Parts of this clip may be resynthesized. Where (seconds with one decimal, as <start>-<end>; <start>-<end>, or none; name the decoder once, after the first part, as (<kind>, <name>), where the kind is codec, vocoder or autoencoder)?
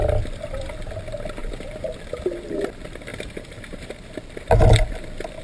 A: 1.4-2.0 (vocoder, BigVGAN v2); 3.1-3.9